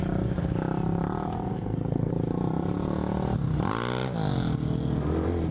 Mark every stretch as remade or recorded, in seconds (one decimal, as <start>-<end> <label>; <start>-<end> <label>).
0.0-1.5 recorded; 1.5-2.1 remade; 2.1-5.5 recorded